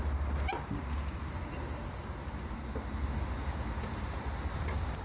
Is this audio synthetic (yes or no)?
no